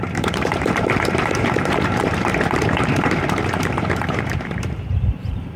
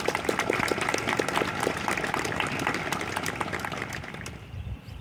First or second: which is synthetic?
first